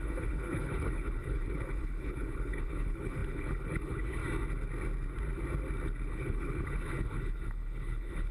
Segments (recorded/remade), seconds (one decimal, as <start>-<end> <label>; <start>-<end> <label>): 0.0-4.2 remade; 4.2-6.1 recorded; 6.1-8.3 remade